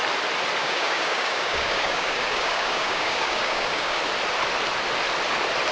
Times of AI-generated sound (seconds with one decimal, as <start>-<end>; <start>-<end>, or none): 0.6-4.0